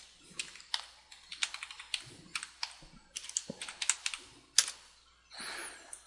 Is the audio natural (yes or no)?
yes